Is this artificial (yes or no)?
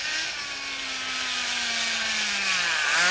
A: no